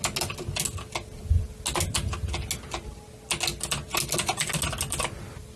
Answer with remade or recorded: recorded